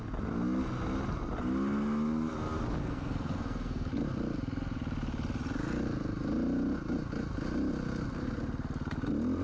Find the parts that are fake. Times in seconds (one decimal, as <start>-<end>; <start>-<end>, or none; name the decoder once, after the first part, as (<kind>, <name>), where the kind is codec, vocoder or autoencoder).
2.8-3.9 (codec, SNAC)